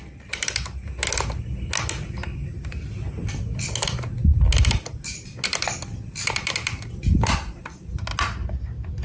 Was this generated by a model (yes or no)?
no